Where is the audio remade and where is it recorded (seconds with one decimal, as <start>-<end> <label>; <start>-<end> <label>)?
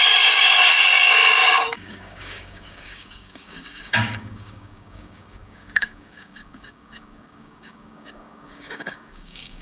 0.0-9.6 remade